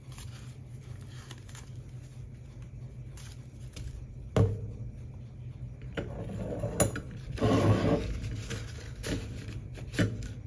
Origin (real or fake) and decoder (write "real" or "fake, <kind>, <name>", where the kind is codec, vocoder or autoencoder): real